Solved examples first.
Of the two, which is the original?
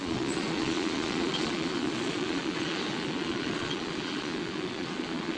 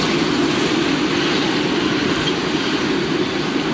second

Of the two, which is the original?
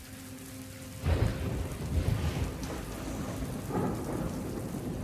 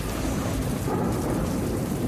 first